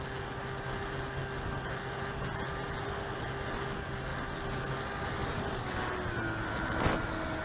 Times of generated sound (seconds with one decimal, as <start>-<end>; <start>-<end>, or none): none